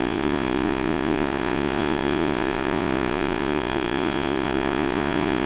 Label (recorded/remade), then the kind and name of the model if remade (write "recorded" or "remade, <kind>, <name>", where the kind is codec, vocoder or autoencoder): remade, vocoder, Vocos